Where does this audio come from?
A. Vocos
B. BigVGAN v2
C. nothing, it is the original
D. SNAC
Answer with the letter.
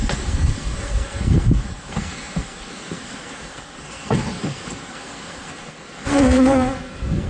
D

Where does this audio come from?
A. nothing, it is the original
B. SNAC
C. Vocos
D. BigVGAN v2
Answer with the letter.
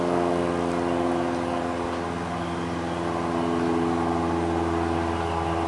A